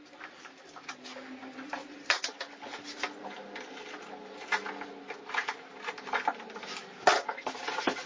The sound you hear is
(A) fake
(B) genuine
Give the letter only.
B